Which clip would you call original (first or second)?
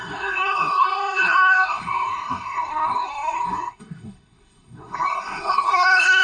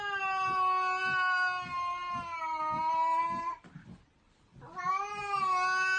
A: second